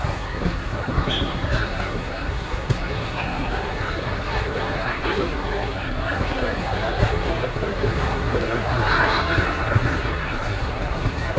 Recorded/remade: remade